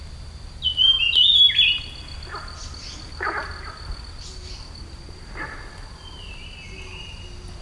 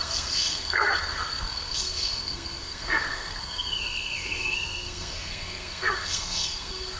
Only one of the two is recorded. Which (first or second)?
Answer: first